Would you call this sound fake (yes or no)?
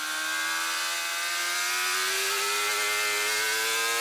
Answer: no